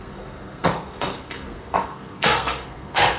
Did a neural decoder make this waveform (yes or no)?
yes